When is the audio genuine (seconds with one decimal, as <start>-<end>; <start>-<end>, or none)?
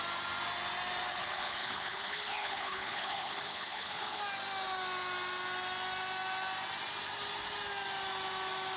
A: 0.0-1.1; 4.2-8.8